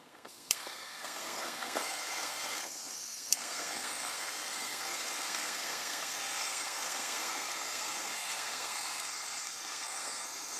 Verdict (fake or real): fake